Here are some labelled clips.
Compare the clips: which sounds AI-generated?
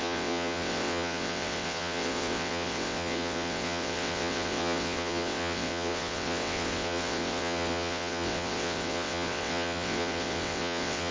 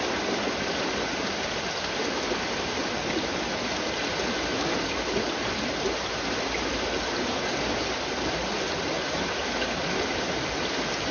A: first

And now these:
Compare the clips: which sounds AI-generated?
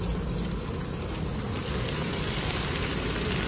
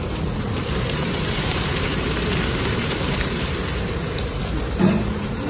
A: second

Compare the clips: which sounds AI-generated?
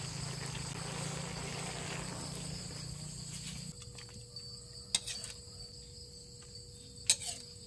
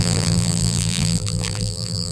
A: second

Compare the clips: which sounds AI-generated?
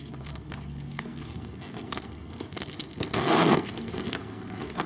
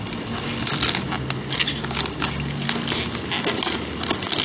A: first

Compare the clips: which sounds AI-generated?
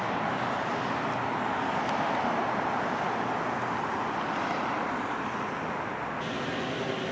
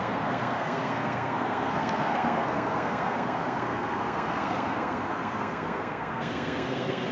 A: second